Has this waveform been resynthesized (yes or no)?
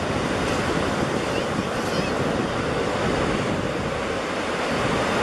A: no